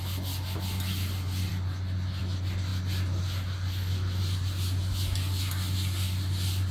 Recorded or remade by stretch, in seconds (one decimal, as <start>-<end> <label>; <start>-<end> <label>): 0.0-6.7 recorded